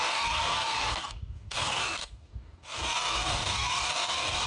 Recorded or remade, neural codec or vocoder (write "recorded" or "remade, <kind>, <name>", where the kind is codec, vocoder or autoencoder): remade, codec, DAC